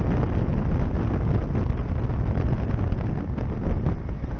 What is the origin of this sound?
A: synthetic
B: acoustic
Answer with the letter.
B